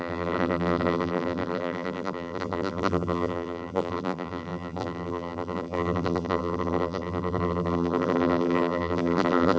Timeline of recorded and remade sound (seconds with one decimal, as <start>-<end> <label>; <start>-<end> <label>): 0.0-9.6 remade